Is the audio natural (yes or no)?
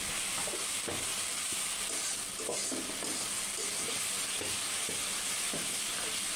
yes